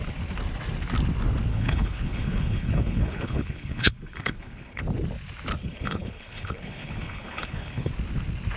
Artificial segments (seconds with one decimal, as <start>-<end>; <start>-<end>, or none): 1.5-4.8; 5.6-7.9